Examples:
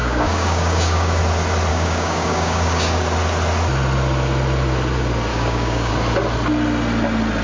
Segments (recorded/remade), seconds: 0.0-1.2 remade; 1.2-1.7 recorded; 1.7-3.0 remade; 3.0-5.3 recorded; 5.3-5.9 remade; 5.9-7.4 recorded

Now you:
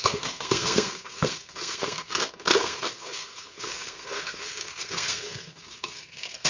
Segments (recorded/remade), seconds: 0.0-6.5 remade

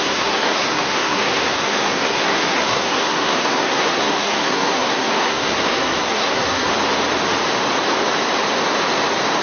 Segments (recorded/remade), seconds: 0.0-6.7 remade; 6.7-9.4 recorded

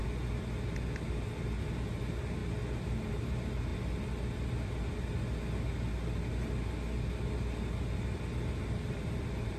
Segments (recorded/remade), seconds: 0.0-2.0 recorded; 2.0-2.4 remade; 2.4-3.1 recorded; 3.1-3.7 remade; 3.7-8.9 recorded; 8.9-9.6 remade

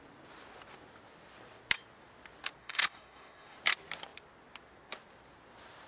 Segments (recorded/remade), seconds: 0.0-2.6 recorded; 2.6-3.6 remade; 3.6-5.9 recorded

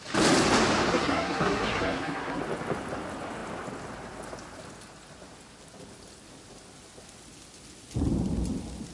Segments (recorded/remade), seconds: 0.0-0.9 recorded; 0.9-2.4 remade; 2.4-8.9 recorded